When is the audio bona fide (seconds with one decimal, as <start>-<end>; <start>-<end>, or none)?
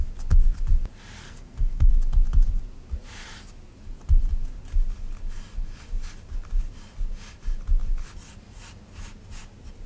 0.0-1.2; 1.9-9.9